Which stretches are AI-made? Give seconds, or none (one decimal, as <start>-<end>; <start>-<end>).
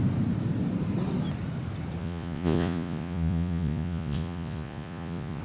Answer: 2.0-5.4